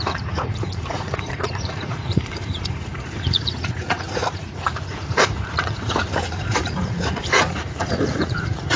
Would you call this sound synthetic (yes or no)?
yes